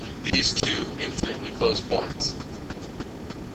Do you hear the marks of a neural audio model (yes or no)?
no